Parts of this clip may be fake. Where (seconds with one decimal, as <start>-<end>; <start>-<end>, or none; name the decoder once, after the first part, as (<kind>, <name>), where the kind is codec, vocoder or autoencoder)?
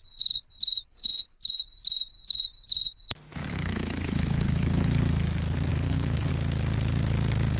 0.9-1.4 (codec, HILCodec); 3.4-4.9; 5.7-6.3